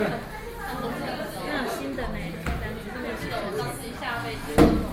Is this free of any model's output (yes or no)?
yes